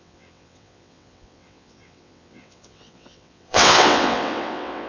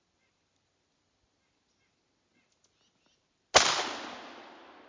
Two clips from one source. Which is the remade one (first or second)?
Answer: first